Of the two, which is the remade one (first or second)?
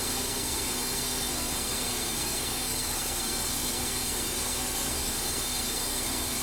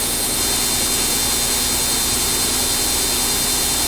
first